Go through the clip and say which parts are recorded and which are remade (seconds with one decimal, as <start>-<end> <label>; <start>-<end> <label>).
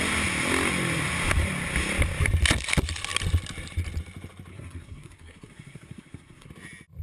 0.0-4.5 recorded; 4.5-6.5 remade; 6.5-7.0 recorded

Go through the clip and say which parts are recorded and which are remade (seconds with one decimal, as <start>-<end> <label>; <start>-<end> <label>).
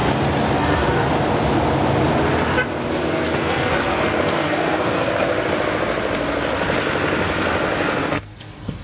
0.0-0.6 recorded; 0.6-1.1 remade; 1.1-3.0 recorded; 3.0-5.3 remade; 5.3-8.0 recorded; 8.0-8.8 remade